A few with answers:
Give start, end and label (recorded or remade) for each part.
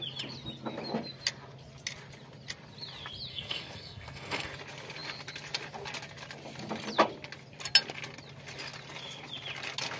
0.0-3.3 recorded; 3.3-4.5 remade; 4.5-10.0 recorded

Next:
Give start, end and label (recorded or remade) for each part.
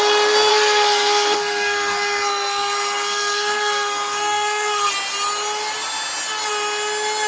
0.0-0.5 recorded; 0.5-4.9 remade; 4.9-7.3 recorded